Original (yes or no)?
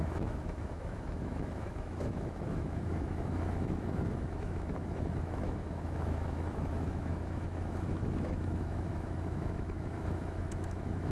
no